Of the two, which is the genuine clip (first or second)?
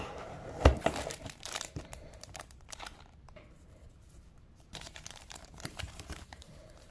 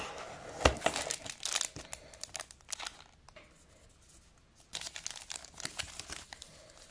second